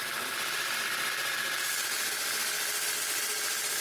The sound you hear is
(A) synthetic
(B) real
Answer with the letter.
B